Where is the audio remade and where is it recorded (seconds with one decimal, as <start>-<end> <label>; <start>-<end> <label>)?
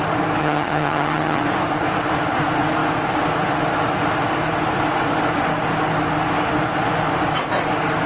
0.0-0.4 recorded; 0.4-1.4 remade; 1.4-8.1 recorded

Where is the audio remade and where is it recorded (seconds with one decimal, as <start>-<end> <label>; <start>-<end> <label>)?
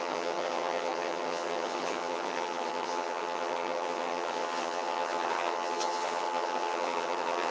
0.0-7.5 remade